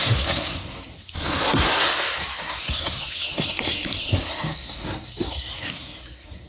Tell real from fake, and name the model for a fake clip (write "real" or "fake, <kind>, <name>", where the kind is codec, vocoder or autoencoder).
fake, codec, SNAC